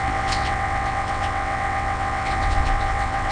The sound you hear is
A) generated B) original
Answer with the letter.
A